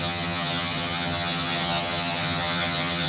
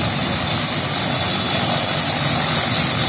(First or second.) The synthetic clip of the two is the first